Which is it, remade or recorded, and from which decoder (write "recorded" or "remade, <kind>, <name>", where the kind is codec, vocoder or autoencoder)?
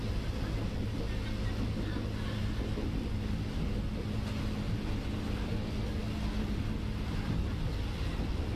recorded